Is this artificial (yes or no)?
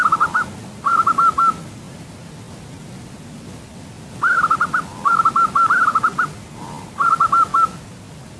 no